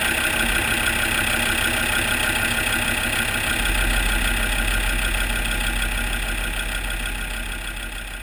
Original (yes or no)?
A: yes